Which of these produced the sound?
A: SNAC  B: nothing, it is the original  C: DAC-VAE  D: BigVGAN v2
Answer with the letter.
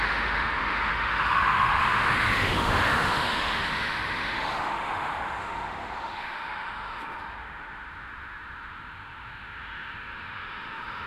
C